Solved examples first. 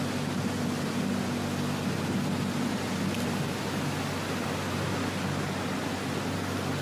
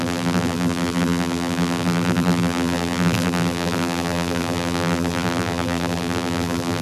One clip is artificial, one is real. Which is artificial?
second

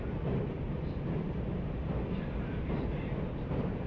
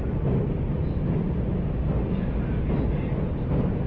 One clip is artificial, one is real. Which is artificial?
first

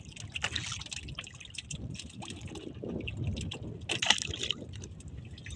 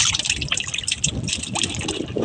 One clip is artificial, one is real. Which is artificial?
second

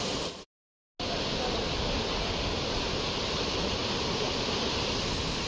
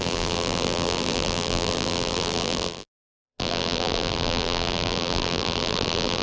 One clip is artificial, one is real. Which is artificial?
second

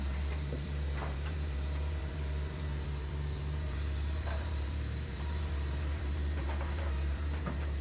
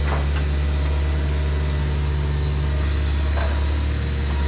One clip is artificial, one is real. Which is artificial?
first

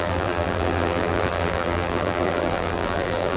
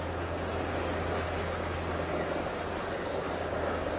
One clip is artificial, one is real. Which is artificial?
first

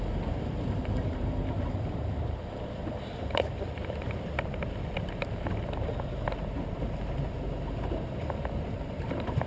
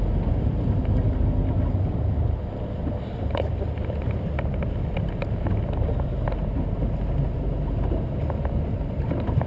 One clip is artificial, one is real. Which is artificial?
first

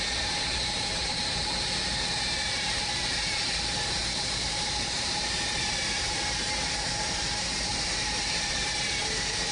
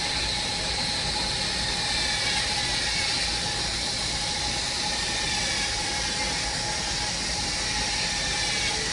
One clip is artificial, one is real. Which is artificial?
first